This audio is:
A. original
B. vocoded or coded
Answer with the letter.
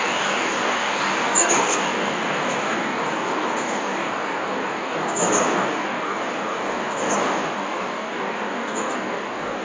B